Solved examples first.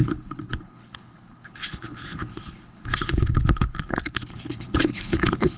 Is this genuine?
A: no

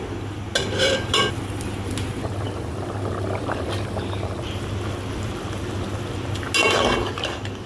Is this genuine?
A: yes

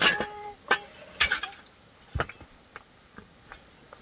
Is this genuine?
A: no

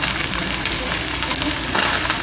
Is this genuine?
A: yes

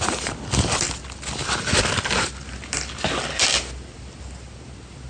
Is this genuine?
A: yes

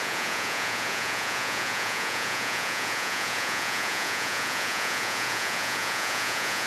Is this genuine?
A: no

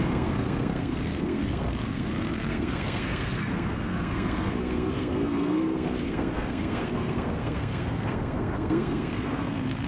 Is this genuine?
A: no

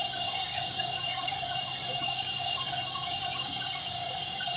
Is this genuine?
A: no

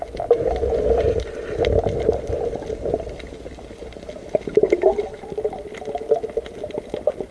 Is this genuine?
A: yes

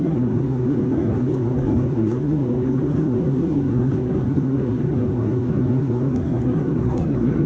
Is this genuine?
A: no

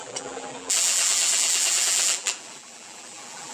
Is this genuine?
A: no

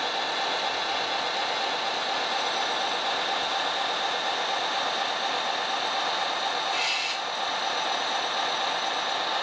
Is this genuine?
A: yes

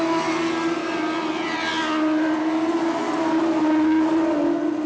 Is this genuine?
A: yes